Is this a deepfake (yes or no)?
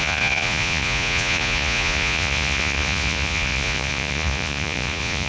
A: yes